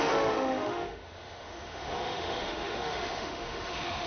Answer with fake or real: fake